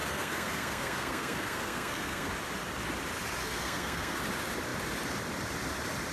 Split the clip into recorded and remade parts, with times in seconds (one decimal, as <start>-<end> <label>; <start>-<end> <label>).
0.0-2.3 remade; 2.3-3.4 recorded; 3.4-4.2 remade; 4.2-6.1 recorded